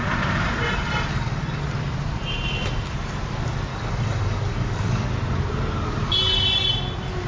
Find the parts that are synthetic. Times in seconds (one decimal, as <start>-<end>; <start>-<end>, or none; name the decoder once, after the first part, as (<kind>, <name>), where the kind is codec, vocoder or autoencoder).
1.1-1.6 (codec, DAC); 3.7-5.1